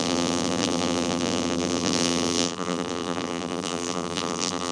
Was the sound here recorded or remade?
remade